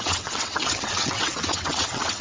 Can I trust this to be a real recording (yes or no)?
no